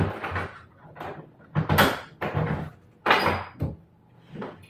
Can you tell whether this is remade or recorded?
recorded